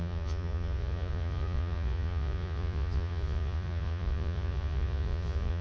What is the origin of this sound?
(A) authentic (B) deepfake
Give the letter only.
B